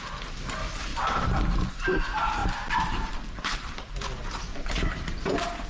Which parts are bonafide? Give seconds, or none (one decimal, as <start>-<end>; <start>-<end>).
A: 0.0-0.9; 1.7-2.4; 3.8-4.4; 5.3-5.7